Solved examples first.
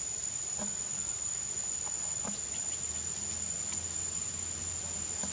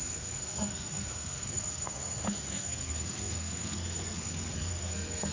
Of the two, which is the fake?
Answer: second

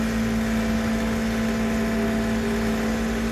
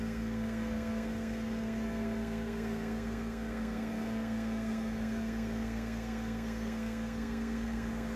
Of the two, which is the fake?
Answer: second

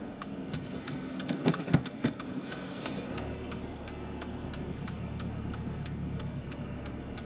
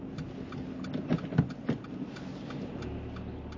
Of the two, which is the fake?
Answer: first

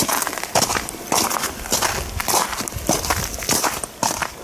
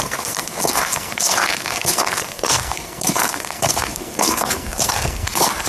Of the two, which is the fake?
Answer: second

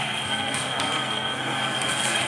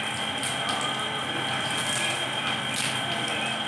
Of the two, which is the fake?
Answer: first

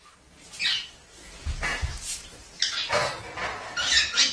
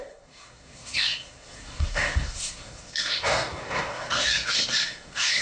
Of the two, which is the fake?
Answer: second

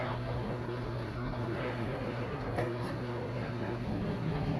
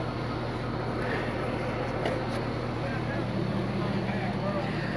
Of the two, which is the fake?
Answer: first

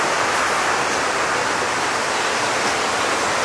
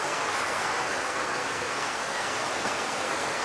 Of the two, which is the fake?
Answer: second